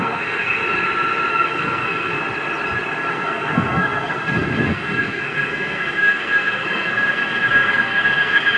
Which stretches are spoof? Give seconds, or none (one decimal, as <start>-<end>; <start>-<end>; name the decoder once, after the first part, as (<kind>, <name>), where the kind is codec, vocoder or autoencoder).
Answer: 0.0-0.6 (codec, SNAC); 1.3-2.2; 3.1-8.6